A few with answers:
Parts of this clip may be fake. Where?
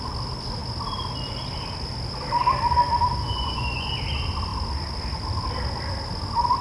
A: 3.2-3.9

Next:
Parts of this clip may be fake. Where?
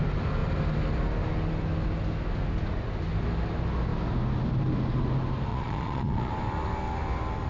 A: 5.5-6.3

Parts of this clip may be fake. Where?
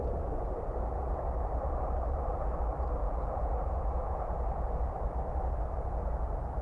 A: 3.0-4.8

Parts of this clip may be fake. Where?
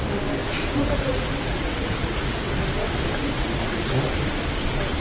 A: 0.4-2.4; 3.2-3.9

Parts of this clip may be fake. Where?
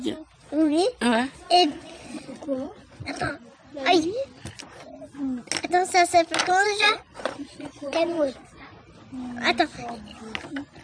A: 0.4-3.3; 6.4-8.6